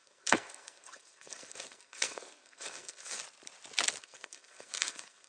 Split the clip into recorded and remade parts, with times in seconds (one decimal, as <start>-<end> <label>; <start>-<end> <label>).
0.0-3.2 remade; 3.2-4.0 recorded; 4.0-5.3 remade

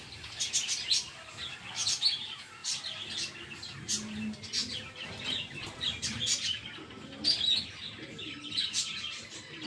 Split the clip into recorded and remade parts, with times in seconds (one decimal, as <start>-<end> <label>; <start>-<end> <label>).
0.0-2.6 recorded; 2.6-3.1 remade; 3.1-4.6 recorded; 4.6-6.2 remade; 6.2-9.7 recorded